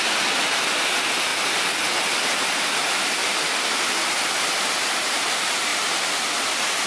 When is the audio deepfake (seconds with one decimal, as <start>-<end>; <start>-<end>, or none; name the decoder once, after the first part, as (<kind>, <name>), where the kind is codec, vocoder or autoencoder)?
0.0-1.3 (vocoder, BigVGAN v2); 2.6-3.2; 4.6-6.9